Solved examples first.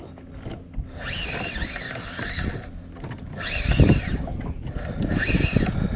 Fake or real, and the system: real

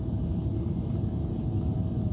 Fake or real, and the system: real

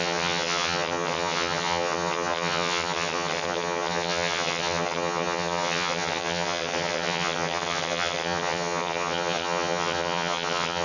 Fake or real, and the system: fake, vocoder, HiFi-GAN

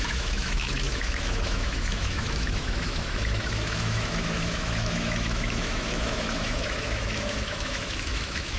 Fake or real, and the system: fake, autoencoder, DAC-VAE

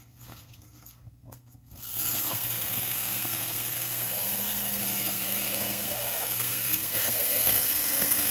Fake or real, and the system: fake, codec, SNAC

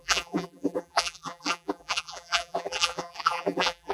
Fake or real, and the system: fake, vocoder, BigVGAN v2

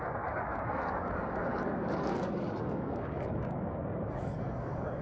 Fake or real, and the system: fake, codec, DAC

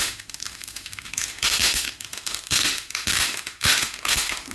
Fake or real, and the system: fake, autoencoder, DAC-VAE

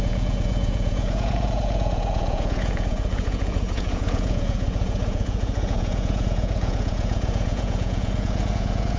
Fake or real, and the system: fake, vocoder, Vocos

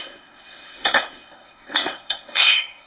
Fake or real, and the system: fake, codec, SNAC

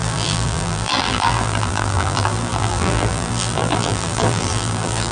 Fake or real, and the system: fake, vocoder, BigVGAN v2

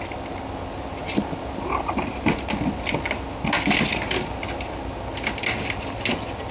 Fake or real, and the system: real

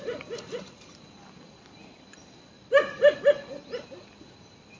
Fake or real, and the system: real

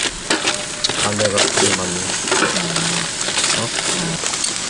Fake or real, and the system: real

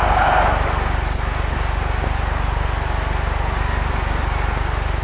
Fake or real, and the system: real